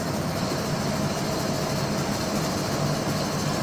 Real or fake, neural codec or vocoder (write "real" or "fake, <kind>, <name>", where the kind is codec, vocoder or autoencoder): real